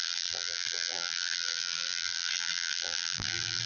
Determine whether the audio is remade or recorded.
remade